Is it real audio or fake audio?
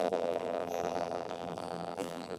fake